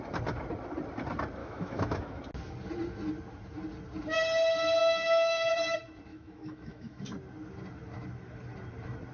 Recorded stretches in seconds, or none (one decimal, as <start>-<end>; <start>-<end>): 0.0-1.4; 2.2-4.8; 5.5-6.1; 7.0-9.1